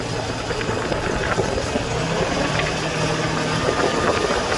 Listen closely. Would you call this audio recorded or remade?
recorded